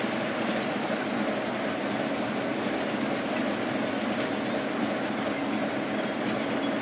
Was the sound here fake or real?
real